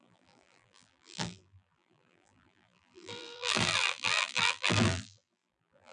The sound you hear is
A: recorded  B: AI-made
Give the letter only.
B